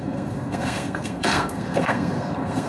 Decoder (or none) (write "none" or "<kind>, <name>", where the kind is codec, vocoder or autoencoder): codec, SNAC